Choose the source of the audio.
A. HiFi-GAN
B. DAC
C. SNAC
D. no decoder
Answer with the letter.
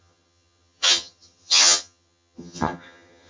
A